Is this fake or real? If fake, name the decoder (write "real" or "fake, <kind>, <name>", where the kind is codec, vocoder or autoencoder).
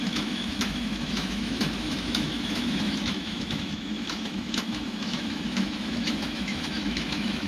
fake, autoencoder, DAC-VAE